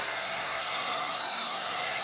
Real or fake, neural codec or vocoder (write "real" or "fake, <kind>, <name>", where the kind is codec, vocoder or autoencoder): fake, codec, SNAC